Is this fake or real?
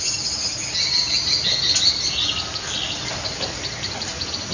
real